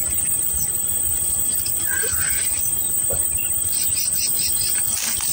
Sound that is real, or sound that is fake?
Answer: fake